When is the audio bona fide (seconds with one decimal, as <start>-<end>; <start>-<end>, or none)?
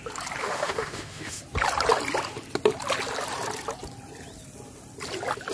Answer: 0.0-0.4; 1.4-5.5